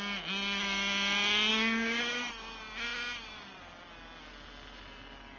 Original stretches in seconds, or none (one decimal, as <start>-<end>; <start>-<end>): 0.0-1.5; 2.0-5.4